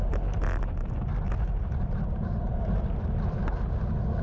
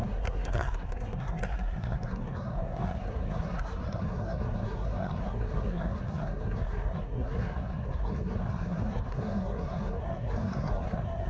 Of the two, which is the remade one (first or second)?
second